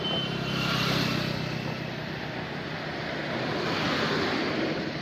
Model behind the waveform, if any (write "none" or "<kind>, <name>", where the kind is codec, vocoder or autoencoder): none